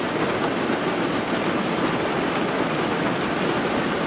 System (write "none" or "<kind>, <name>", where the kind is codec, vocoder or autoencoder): none